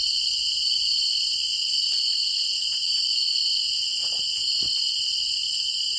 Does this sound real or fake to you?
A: real